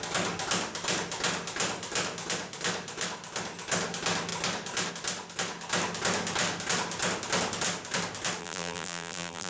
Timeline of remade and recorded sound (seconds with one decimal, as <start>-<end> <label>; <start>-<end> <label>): 0.0-8.4 recorded; 8.4-9.5 remade